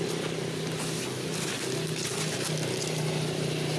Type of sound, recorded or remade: recorded